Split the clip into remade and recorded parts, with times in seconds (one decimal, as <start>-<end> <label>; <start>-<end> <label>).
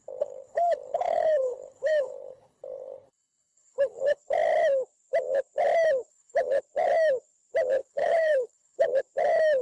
0.0-4.2 remade; 4.2-6.1 recorded; 6.1-6.6 remade; 6.6-7.8 recorded; 7.8-9.0 remade; 9.0-9.6 recorded